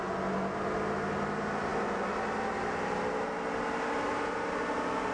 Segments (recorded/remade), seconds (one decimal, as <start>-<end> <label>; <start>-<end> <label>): 0.0-5.1 recorded